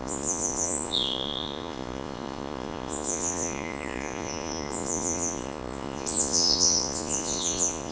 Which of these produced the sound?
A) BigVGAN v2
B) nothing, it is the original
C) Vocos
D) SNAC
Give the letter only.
C